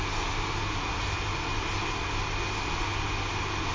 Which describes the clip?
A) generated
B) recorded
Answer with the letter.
B